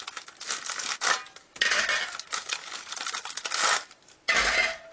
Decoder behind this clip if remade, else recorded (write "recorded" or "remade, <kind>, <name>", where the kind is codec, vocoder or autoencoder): recorded